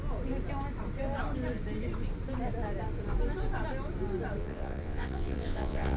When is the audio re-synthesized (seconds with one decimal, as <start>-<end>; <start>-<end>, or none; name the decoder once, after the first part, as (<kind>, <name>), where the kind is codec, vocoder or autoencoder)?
4.4-6.0 (vocoder, WaveNeXt)